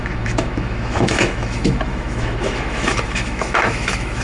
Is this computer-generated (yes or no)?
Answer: yes